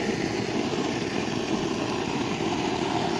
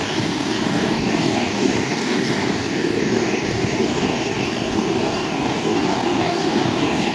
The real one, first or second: first